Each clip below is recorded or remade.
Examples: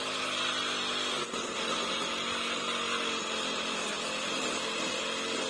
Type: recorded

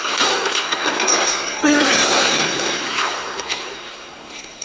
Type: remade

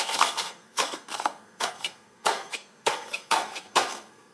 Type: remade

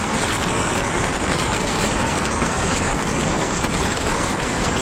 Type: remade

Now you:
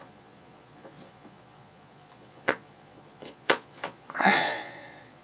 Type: remade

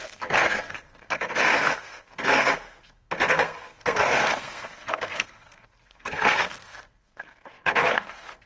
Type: remade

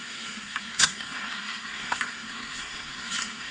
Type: remade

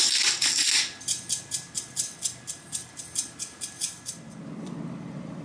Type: recorded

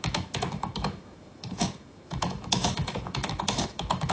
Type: remade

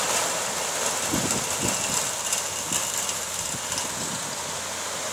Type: recorded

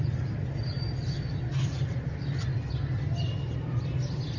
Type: recorded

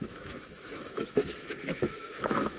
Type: remade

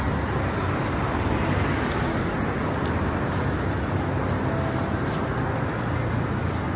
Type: recorded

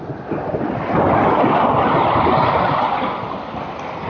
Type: recorded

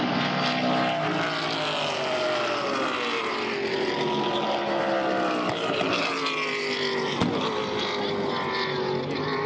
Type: recorded